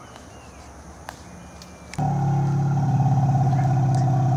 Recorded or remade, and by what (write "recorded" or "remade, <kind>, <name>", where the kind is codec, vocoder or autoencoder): recorded